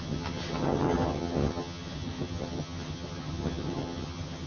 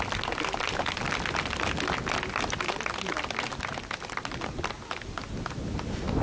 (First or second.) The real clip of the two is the second